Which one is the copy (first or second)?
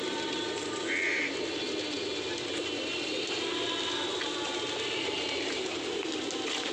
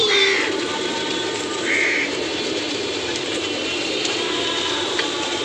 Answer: second